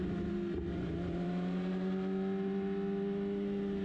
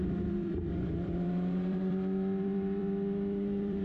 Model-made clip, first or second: second